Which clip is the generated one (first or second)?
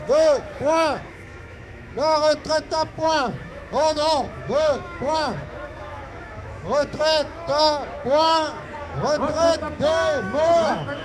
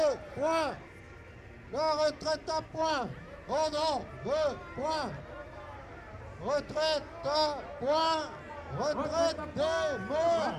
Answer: first